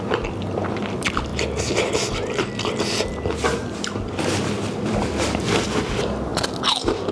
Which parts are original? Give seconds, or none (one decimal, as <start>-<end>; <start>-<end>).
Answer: 1.3-1.9; 6.3-7.1